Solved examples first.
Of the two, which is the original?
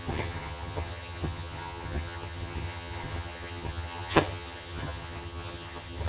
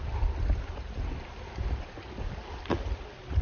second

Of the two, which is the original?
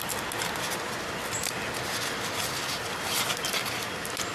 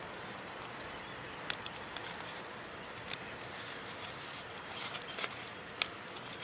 first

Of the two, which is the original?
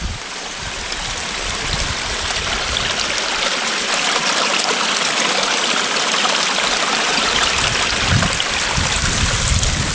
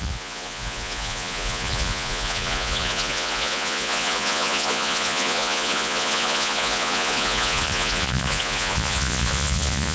first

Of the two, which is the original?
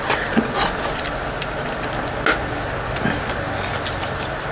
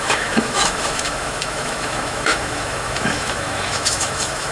first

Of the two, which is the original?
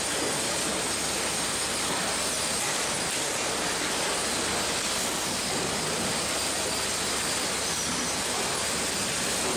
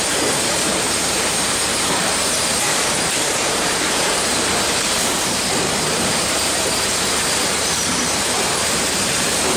first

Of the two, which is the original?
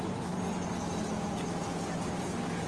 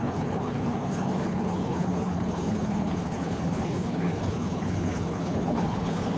first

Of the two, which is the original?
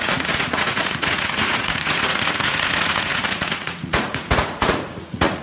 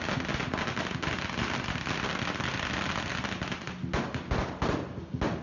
second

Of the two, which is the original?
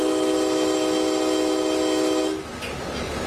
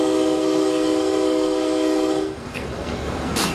first